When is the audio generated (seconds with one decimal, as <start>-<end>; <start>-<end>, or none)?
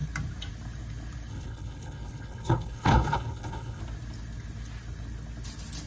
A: 1.3-3.8